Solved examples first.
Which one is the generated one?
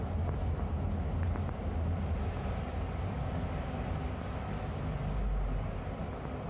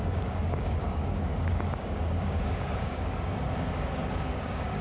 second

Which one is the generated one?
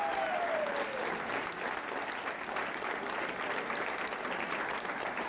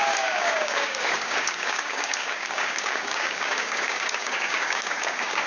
second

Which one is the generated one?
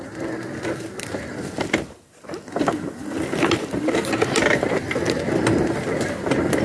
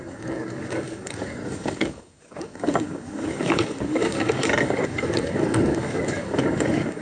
second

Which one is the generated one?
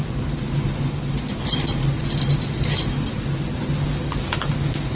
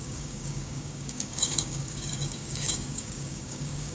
second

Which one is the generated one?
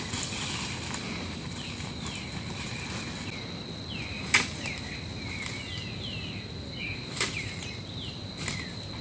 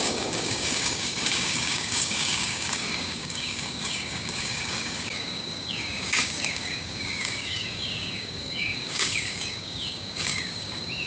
second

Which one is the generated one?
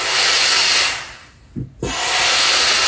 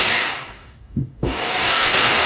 second